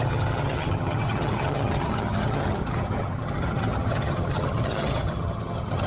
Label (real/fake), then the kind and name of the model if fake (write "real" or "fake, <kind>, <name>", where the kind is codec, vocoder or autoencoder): fake, vocoder, HiFi-GAN